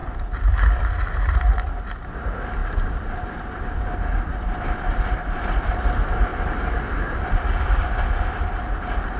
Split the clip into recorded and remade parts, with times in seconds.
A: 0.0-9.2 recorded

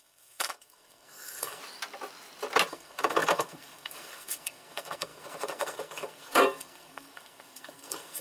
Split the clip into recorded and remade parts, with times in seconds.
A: 0.0-1.6 remade; 1.6-2.7 recorded; 2.7-8.2 remade

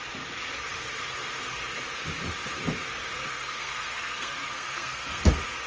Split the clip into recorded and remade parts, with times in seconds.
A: 0.0-3.3 recorded; 3.3-5.2 remade; 5.2-5.7 recorded

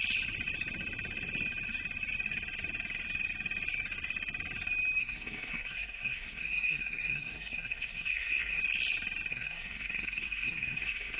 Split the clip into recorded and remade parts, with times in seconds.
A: 0.0-5.0 recorded; 5.0-8.6 remade; 8.6-9.3 recorded; 9.3-11.2 remade

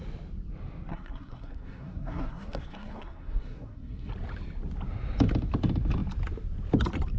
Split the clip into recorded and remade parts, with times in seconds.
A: 0.0-0.9 recorded; 0.9-4.1 remade; 4.1-7.2 recorded

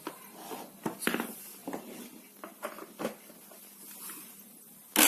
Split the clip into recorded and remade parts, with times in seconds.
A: 0.0-5.1 recorded